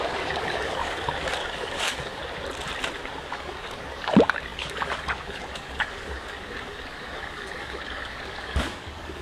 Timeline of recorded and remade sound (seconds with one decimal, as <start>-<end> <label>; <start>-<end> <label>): 0.0-2.2 remade; 2.2-3.2 recorded; 3.2-9.2 remade